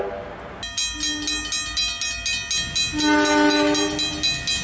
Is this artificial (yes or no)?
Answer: no